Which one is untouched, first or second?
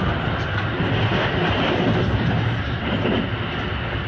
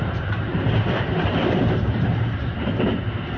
first